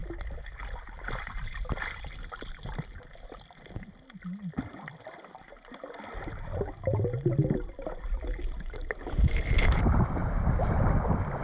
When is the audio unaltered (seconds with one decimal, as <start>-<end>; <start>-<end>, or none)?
0.0-11.4